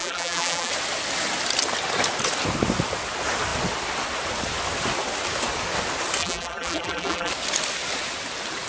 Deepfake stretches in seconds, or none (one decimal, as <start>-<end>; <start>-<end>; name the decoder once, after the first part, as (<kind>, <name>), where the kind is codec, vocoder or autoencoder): 0.0-0.7 (vocoder, BigVGAN v2); 6.2-7.3